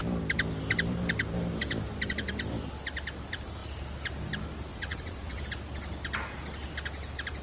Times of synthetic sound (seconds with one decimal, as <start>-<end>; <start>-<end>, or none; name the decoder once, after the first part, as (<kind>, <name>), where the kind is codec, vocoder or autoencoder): 4.7-5.4 (vocoder, WaveNeXt)